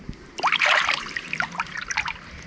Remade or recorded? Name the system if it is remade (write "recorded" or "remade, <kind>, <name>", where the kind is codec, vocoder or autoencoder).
recorded